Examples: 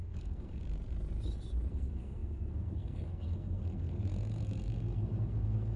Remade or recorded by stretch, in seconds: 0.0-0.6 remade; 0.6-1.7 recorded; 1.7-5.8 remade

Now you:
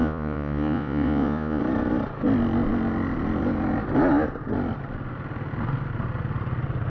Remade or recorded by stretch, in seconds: 0.0-1.6 remade; 1.6-6.9 recorded

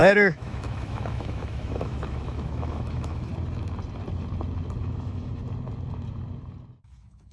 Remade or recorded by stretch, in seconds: 0.0-3.3 remade; 3.3-4.8 recorded; 4.8-5.4 remade; 5.4-6.8 recorded; 6.8-7.3 remade